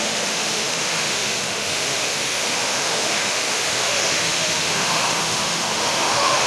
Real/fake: fake